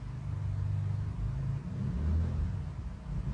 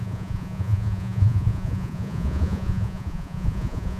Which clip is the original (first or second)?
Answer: first